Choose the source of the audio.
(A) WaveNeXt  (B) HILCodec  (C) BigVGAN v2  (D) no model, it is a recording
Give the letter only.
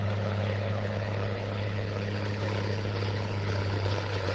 B